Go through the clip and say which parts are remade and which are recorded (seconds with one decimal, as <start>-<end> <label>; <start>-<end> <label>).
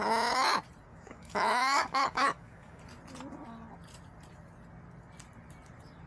0.0-0.9 recorded; 0.9-2.8 remade; 2.8-6.1 recorded